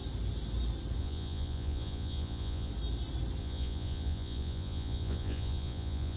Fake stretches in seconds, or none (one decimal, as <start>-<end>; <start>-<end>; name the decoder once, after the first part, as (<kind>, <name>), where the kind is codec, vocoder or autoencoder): 1.0-2.7 (vocoder, Vocos); 3.4-6.2